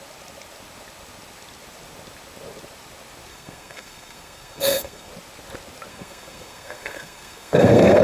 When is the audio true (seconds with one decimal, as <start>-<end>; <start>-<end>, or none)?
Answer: 0.0-3.3; 5.1-5.9